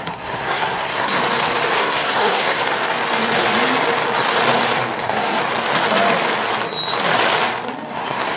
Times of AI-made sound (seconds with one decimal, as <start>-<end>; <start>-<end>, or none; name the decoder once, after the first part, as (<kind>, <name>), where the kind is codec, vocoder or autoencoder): 0.0-1.2 (codec, SNAC); 1.8-2.6; 5.0-5.4; 7.9-8.4